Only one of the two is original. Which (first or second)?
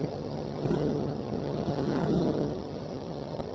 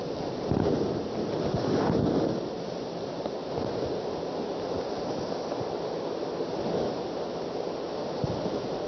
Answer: second